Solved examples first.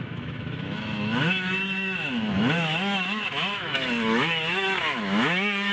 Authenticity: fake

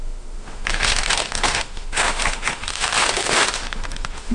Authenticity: fake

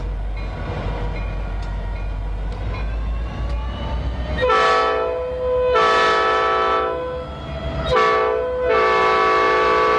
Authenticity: real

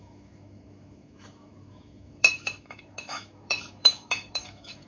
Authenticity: fake